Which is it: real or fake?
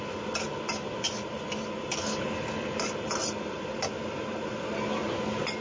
real